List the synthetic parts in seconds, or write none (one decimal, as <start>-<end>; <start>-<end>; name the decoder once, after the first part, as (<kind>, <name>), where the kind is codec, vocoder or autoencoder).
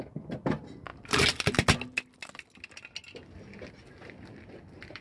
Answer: none